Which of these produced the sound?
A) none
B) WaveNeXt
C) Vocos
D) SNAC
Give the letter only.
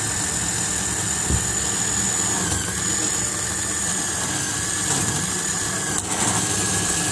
A